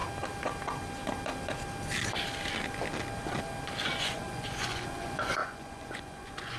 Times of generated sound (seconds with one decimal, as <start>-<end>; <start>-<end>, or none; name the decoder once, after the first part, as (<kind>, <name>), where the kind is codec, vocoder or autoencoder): 4.0-6.6 (vocoder, Vocos)